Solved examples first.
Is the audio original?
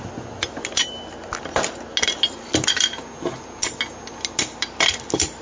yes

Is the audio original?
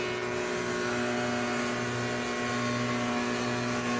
yes